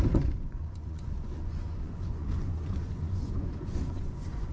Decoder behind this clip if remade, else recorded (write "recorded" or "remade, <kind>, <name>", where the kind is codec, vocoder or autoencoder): remade, vocoder, Vocos